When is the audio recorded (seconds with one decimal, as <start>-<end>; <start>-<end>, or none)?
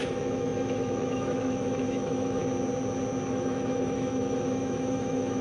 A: 2.4-3.3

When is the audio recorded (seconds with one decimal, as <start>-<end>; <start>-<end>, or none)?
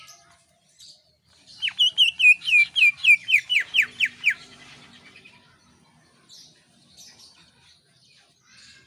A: 0.0-3.2; 5.3-8.9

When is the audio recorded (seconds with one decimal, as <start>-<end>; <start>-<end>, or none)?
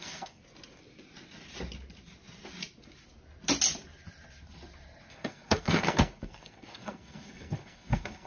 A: 0.4-5.1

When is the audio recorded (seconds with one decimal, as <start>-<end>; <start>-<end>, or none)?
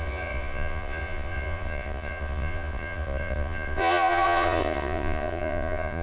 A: none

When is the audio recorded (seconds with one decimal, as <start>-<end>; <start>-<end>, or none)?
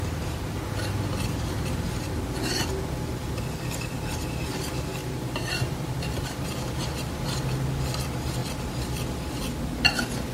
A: 0.0-1.1; 2.2-5.0; 7.5-10.3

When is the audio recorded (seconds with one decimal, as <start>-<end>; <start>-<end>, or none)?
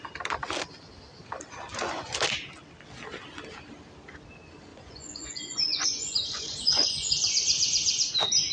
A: 0.0-4.7; 8.1-8.5